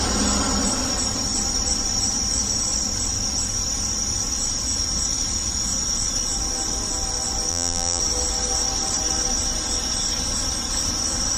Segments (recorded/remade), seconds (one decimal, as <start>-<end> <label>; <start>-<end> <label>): 0.0-7.5 recorded; 7.5-8.0 remade; 8.0-11.4 recorded